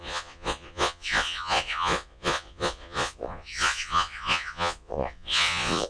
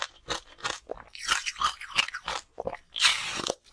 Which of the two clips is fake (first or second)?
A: first